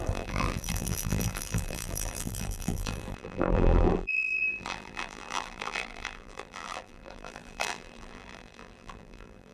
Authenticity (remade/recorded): remade